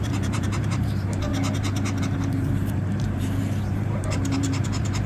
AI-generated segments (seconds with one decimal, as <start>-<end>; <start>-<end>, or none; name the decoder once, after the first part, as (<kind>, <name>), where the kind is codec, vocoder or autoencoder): 0.0-1.3 (vocoder, BigVGAN v2); 2.0-5.1